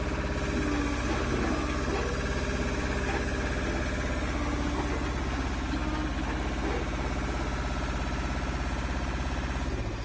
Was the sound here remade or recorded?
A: recorded